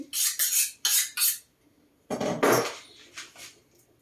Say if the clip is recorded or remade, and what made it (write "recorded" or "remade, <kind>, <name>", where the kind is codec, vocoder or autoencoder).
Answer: recorded